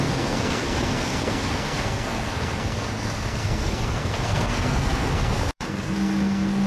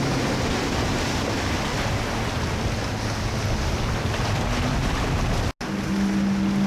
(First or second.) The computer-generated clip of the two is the first